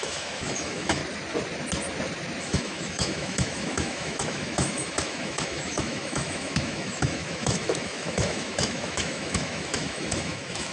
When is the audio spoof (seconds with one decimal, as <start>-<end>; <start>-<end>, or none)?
0.0-1.0; 2.4-10.7

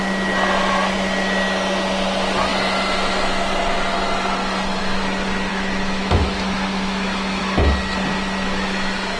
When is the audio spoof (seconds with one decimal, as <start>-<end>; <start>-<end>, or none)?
5.5-7.4

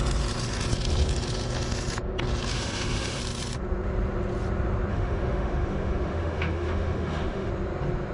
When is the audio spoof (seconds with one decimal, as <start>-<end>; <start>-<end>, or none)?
2.5-3.2; 4.9-7.5

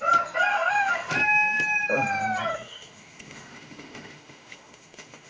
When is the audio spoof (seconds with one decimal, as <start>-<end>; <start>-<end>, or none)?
0.5-1.1; 2.5-5.3

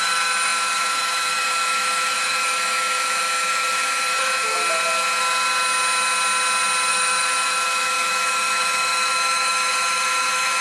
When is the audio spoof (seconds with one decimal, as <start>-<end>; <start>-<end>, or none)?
0.0-4.6; 6.9-10.6

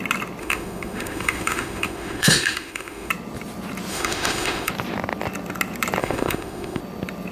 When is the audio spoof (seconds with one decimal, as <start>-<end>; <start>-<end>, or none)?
0.4-3.1; 3.9-4.7; 6.0-6.8

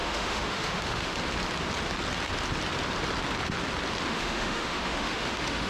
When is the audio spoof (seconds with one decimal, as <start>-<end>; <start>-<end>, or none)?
0.0-1.1; 4.1-5.7

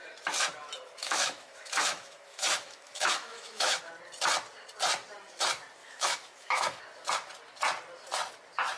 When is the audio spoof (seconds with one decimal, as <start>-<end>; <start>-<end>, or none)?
1.0-3.8; 5.8-6.8